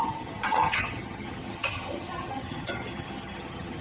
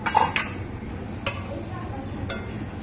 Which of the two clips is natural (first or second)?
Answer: second